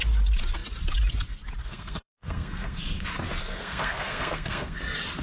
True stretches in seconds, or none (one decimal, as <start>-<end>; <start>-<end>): 0.0-1.6; 2.8-3.4; 4.8-5.2